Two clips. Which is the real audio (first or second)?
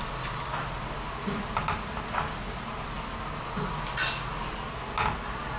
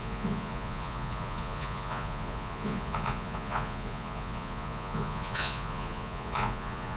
first